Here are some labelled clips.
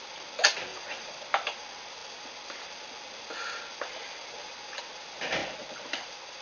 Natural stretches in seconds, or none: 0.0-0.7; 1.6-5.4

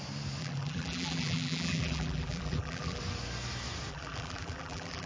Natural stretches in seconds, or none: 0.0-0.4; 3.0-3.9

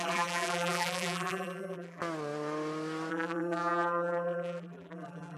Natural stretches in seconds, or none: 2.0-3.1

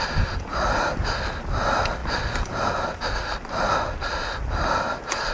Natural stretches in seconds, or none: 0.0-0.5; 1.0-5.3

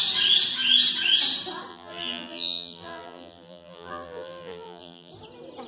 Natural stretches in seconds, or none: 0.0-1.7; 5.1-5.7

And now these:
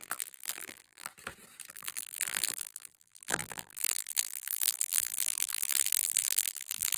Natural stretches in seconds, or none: 1.1-1.7